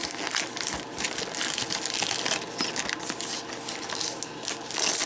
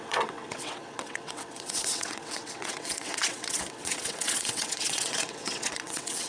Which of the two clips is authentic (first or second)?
first